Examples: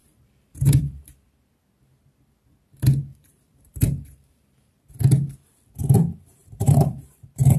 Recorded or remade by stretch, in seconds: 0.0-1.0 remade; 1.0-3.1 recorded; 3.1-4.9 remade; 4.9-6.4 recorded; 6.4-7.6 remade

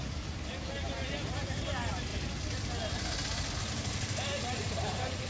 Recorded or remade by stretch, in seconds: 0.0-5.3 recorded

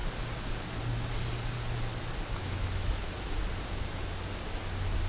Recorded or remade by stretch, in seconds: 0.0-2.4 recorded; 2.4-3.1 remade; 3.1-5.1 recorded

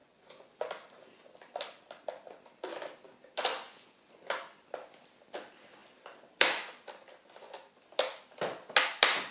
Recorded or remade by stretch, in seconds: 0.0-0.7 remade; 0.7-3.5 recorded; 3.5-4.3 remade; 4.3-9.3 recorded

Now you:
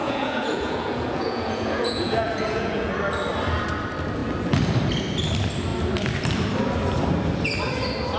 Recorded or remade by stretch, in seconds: 0.0-2.9 remade; 2.9-8.2 recorded

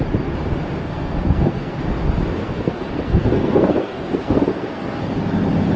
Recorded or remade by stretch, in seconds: 0.0-0.8 recorded; 0.8-1.8 remade; 1.8-2.4 recorded; 2.4-5.0 remade; 5.0-5.8 recorded